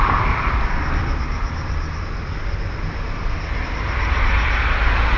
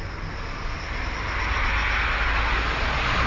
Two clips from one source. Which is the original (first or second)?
second